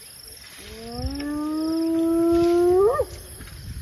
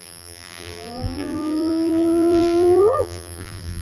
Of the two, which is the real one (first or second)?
first